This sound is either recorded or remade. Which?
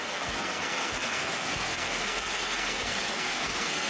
remade